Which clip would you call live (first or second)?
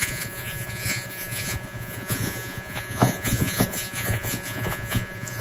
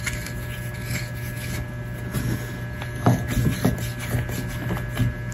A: second